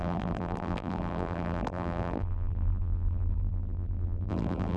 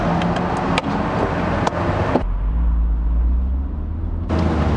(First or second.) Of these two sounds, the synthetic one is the first